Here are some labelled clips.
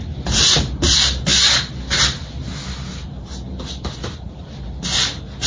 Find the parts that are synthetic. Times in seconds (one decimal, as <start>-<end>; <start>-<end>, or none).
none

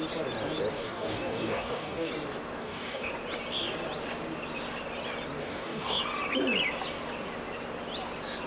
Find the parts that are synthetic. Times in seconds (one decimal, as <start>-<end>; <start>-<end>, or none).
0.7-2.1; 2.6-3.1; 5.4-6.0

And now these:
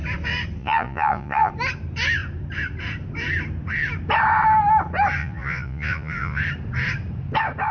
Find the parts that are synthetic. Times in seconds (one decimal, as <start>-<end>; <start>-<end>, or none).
0.6-1.5; 5.2-6.4